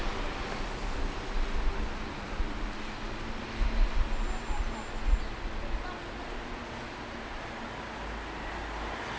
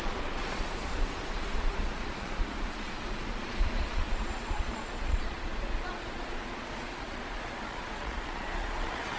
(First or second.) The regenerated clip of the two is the second